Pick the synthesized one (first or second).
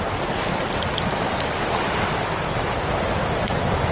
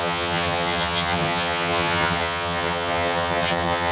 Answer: second